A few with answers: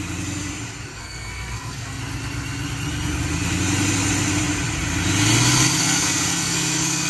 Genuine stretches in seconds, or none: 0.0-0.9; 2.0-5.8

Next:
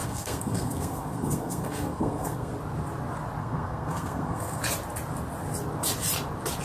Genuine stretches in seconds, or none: 2.5-3.4; 4.6-6.6

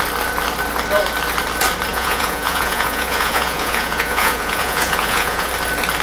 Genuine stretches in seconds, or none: 0.0-1.9; 5.5-6.0

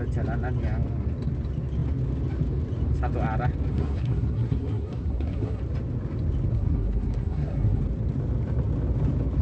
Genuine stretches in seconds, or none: 0.0-3.7; 5.6-6.5; 7.8-9.4

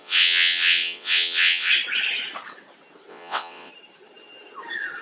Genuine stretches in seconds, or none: 1.7-3.1; 3.7-5.0

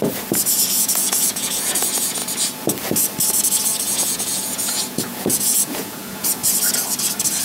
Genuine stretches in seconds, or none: 0.0-0.6; 2.2-3.8; 6.4-7.4